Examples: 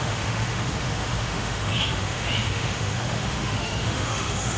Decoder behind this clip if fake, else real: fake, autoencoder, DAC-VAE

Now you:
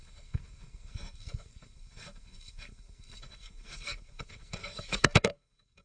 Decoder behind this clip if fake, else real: fake, codec, SNAC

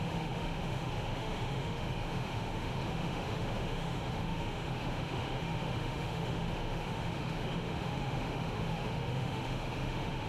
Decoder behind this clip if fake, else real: fake, autoencoder, DAC-VAE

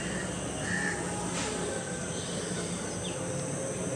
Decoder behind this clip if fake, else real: real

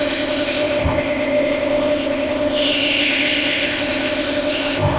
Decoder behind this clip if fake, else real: fake, codec, ZipCodec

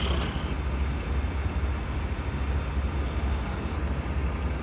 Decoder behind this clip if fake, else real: real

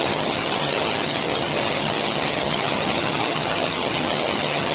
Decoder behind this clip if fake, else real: fake, vocoder, HiFi-GAN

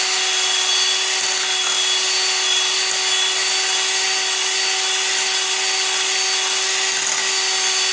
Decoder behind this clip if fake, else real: real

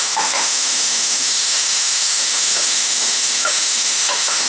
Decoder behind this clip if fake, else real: fake, autoencoder, DAC-VAE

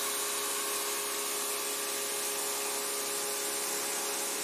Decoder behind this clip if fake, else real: real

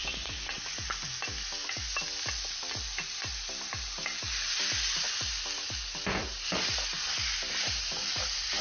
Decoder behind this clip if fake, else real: real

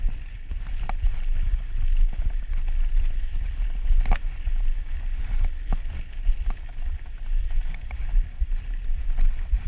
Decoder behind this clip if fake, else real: real